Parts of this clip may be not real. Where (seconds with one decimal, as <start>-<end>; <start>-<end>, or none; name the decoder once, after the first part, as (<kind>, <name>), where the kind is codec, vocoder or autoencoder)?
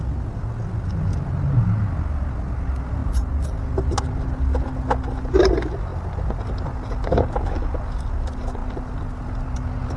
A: none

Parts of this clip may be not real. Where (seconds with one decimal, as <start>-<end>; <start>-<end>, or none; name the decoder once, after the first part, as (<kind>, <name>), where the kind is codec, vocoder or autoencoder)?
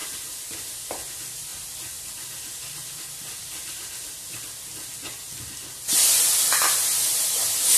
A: none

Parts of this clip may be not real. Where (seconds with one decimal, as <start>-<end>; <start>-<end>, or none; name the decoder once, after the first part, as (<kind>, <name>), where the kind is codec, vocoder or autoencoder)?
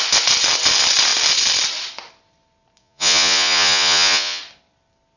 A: 2.8-4.4 (vocoder, Vocos)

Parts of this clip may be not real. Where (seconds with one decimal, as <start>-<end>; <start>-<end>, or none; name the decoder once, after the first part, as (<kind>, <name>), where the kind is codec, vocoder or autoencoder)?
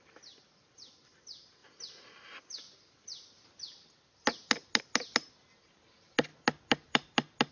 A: none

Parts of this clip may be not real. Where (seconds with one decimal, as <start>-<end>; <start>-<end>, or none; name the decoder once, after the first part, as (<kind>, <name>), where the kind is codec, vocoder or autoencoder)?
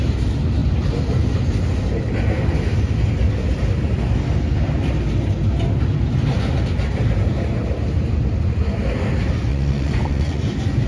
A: 9.5-10.4 (vocoder, Vocos)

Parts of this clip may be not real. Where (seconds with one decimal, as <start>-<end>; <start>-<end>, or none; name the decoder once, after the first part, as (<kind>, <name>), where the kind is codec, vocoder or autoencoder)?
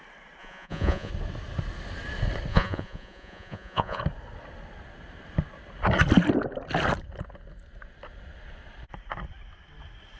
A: 0.4-1.1 (vocoder, Vocos); 2.5-4.0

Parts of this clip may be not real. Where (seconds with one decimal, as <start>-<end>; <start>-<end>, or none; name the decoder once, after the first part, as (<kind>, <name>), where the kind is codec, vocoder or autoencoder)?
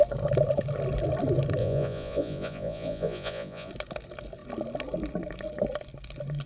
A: 1.6-3.7 (vocoder, Vocos)